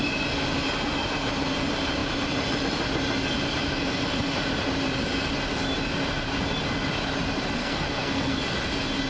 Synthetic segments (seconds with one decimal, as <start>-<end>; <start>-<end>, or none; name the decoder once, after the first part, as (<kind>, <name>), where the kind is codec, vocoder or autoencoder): 7.6-8.4 (codec, SNAC)

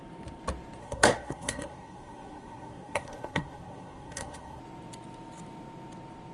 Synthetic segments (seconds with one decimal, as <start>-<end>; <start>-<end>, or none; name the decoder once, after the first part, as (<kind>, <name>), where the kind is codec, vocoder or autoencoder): 0.8-4.6 (codec, SNAC)

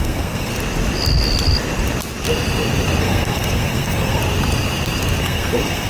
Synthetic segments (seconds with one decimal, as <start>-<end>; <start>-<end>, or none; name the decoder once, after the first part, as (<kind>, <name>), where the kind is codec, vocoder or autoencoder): 0.0-0.5 (codec, SNAC); 3.0-4.2; 5.2-5.9

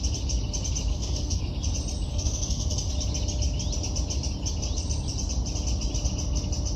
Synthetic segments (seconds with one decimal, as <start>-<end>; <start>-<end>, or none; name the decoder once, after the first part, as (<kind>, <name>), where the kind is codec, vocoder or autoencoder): 0.9-1.4 (codec, SNAC); 2.1-2.9

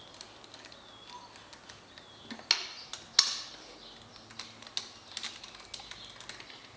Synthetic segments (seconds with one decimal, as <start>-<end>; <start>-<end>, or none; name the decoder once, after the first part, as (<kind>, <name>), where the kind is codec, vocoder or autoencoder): none

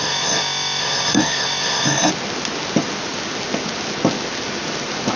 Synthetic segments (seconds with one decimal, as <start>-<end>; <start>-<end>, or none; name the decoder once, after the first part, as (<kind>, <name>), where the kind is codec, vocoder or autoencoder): 0.0-2.1 (codec, SNAC)

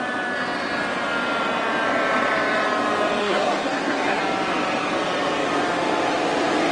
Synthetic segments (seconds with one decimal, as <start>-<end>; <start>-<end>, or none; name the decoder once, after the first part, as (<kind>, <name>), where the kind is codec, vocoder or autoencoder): 3.2-4.2 (codec, SNAC)

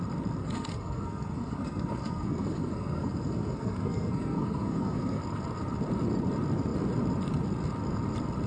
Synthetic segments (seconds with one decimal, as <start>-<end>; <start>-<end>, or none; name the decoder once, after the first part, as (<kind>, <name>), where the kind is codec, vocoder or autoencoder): 0.4-5.2 (codec, SNAC)